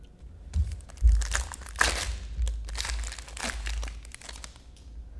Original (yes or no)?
yes